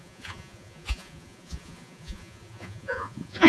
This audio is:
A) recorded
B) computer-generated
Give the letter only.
B